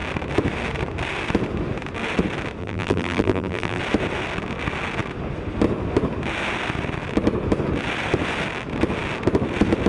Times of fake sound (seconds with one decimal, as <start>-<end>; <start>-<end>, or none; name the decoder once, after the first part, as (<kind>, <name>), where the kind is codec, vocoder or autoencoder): 2.6-3.8 (vocoder, BigVGAN v2)